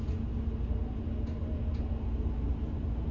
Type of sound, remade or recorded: recorded